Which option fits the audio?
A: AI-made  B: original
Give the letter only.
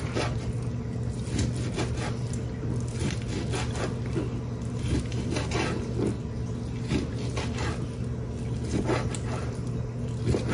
B